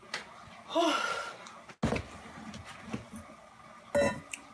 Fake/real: real